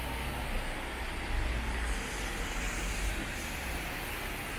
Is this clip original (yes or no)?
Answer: yes